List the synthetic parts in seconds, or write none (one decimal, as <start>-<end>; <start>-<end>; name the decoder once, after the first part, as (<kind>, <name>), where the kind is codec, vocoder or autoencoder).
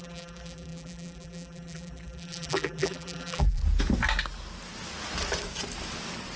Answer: 0.0-3.6 (vocoder, BigVGAN v2)